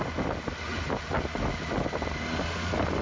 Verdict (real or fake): real